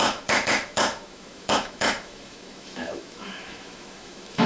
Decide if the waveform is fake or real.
fake